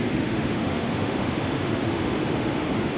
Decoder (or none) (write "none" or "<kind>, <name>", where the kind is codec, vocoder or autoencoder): autoencoder, DAC-VAE